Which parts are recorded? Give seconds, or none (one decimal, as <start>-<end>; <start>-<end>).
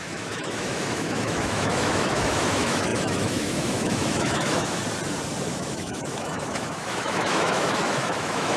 4.8-5.5